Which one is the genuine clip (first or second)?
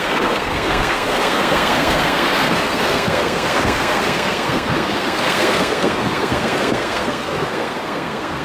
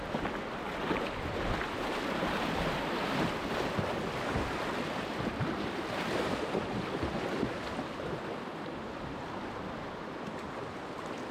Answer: second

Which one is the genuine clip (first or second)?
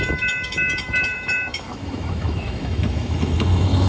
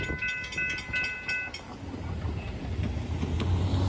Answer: second